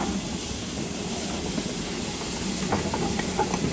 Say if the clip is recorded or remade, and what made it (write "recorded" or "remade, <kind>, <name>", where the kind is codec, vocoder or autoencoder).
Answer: recorded